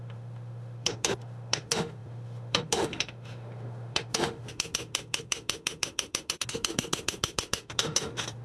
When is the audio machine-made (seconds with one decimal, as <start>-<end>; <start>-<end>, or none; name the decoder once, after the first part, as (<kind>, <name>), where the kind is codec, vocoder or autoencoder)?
0.0-8.4 (autoencoder, DAC-VAE)